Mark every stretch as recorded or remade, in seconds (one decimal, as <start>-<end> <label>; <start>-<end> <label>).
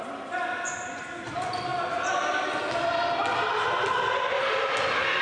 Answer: 0.0-5.2 recorded